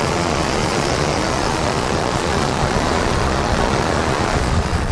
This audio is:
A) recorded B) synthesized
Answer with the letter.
B